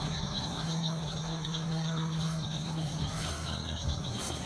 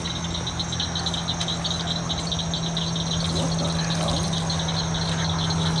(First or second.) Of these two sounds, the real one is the second